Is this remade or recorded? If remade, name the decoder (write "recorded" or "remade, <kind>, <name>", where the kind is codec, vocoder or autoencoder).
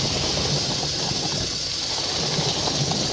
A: recorded